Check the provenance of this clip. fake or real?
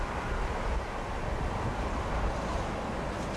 real